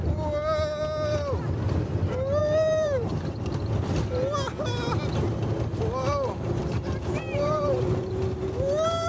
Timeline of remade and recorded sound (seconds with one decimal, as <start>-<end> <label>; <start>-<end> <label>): 0.0-2.4 recorded; 2.4-3.7 remade; 3.7-6.6 recorded; 6.6-9.1 remade